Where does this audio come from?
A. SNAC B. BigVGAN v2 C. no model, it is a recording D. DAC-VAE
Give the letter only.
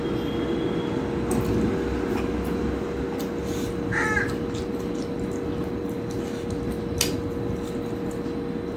C